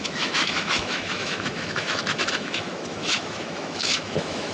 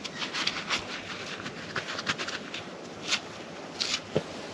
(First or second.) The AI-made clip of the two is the first